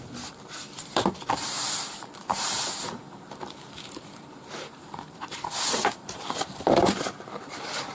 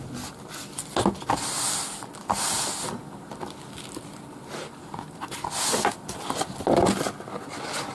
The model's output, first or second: first